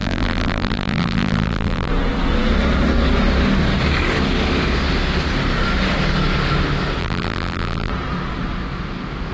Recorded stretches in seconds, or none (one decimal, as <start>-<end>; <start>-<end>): 1.9-7.0; 7.9-9.3

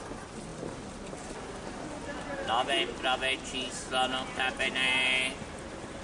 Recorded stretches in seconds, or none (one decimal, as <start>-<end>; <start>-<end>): 0.0-6.0

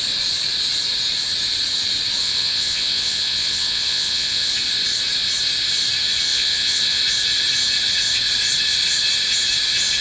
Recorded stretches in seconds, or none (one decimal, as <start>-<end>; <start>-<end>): 0.0-2.2; 4.5-6.3; 7.0-10.0

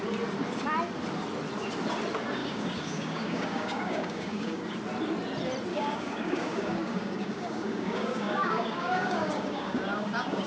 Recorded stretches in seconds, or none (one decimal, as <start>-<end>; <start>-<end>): 0.0-2.4; 4.6-5.7

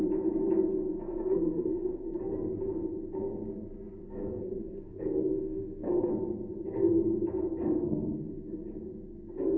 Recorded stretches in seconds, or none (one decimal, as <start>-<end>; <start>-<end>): 0.0-0.9; 2.1-4.0; 6.1-7.7; 8.3-9.6

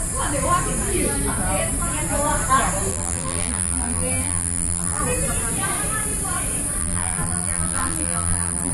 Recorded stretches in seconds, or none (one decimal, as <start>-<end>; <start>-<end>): 0.0-2.9; 5.0-6.8

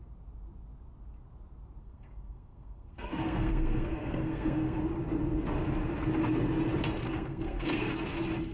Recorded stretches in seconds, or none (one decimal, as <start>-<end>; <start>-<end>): 0.0-1.8; 4.8-7.0; 7.9-8.5